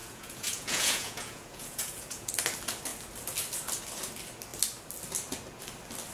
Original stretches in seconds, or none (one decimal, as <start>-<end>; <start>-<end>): 2.3-6.1